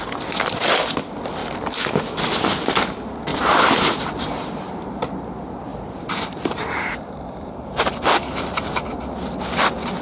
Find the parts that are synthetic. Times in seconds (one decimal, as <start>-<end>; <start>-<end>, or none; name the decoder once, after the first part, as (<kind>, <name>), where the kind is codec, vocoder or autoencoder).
3.3-4.1 (vocoder, BigVGAN v2); 5.7-8.8